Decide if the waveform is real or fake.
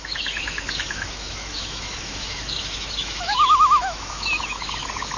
fake